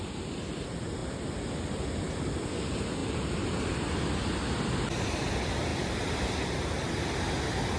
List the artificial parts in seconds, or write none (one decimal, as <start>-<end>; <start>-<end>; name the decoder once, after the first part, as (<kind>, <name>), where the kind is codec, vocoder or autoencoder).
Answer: 3.0-3.6 (vocoder, BigVGAN v2)